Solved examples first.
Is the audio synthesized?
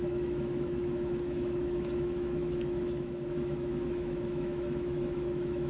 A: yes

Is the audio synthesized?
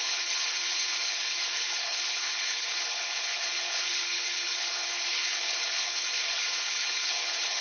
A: yes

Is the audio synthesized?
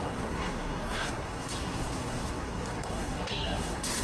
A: yes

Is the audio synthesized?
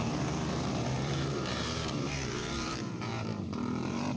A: yes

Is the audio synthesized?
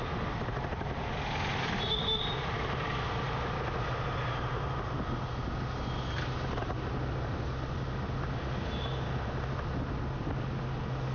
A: no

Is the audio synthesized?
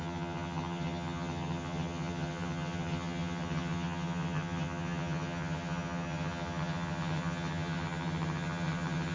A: yes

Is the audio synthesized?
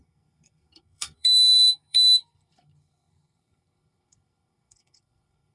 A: yes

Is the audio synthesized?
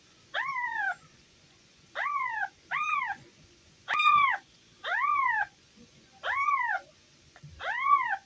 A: yes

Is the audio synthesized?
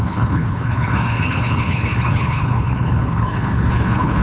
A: yes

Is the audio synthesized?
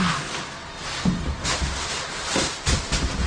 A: no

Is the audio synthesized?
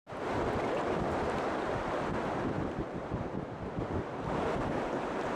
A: no